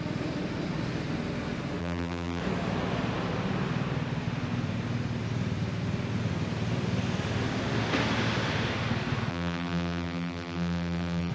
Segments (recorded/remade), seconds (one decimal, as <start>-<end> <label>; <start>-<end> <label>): 0.0-1.8 recorded; 1.8-2.4 remade; 2.4-9.3 recorded; 9.3-11.3 remade